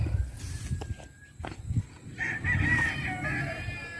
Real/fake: real